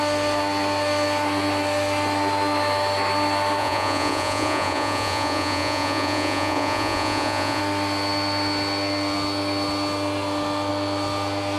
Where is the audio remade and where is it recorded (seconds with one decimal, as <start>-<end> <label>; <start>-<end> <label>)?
0.0-3.6 recorded; 3.6-7.6 remade; 7.6-11.6 recorded